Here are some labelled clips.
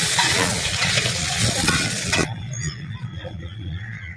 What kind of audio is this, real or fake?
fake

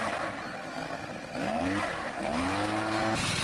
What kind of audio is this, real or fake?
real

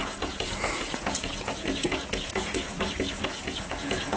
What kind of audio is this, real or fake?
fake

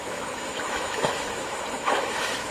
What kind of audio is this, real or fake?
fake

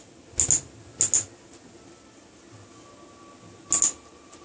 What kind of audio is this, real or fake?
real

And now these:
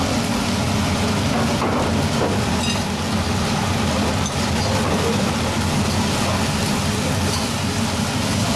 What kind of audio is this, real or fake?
real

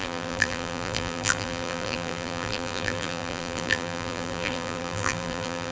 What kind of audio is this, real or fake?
fake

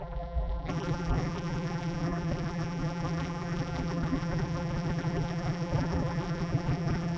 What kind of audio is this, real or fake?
fake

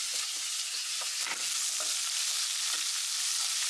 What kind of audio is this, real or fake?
real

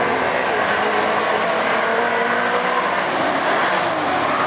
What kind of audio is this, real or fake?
real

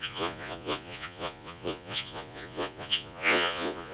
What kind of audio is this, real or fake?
fake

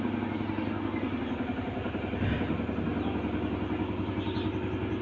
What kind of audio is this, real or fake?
real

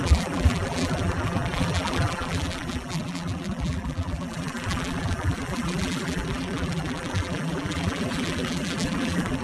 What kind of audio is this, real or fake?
fake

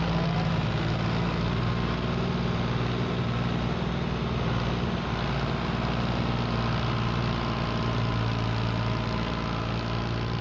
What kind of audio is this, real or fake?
real